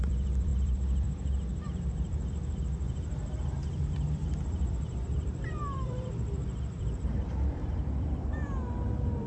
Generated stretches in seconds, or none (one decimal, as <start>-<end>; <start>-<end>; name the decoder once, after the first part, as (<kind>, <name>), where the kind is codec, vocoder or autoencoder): 0.0-9.3 (vocoder, BigVGAN v2)